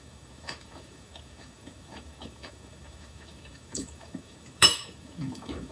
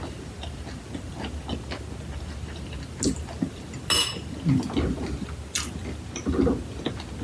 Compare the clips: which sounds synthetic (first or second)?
first